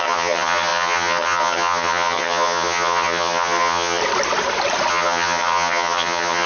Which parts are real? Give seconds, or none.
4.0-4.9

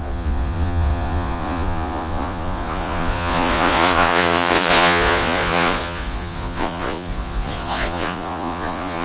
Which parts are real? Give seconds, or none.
none

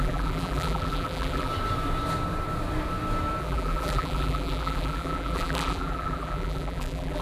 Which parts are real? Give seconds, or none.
1.5-3.4

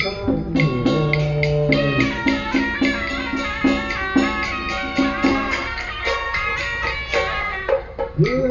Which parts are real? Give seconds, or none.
0.0-5.3; 6.5-7.4; 8.0-8.5

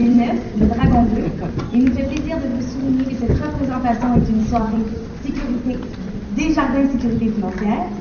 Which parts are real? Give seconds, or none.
1.2-4.4; 5.7-8.0

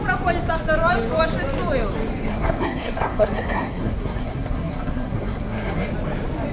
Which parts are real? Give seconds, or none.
0.0-2.3; 5.9-6.5

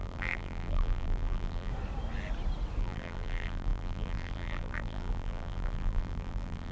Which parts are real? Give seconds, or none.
1.7-2.8